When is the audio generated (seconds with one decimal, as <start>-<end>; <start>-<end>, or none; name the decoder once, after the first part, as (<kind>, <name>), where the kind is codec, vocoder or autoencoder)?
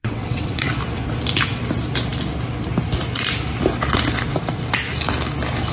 0.0-0.7 (vocoder, WaveNeXt)